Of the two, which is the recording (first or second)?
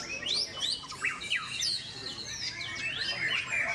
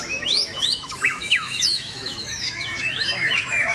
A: first